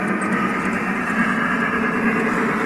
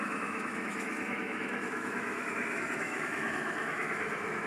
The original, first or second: first